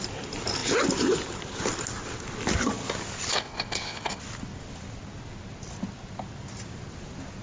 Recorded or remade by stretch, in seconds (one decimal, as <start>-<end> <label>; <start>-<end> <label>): 0.0-3.3 recorded; 3.3-4.2 remade; 4.2-7.4 recorded